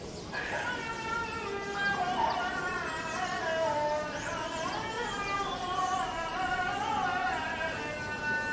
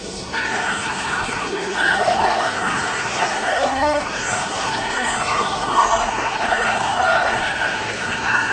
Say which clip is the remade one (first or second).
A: second